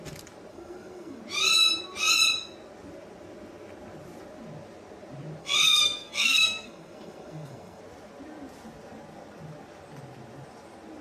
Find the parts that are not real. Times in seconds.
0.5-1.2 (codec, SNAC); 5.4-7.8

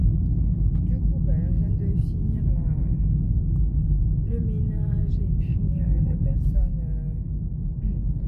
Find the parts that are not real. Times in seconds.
5.5-6.3 (codec, SNAC)

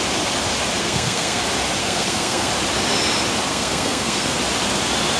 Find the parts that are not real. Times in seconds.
0.8-1.4 (codec, SNAC); 1.8-2.5; 3.5-4.4

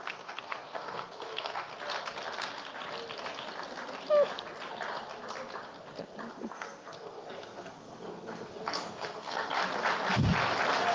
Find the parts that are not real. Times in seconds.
0.0-1.7 (codec, SNAC); 6.3-9.6

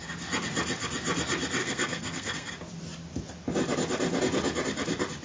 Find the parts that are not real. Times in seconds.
1.6-2.5 (codec, SNAC)

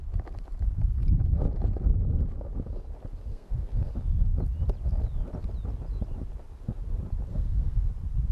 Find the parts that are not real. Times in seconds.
3.3-3.9 (codec, SNAC); 7.3-7.9

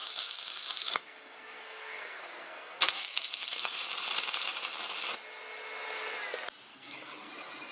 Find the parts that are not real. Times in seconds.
0.0-3.8 (codec, SNAC); 6.7-7.3